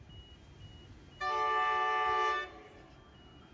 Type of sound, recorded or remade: recorded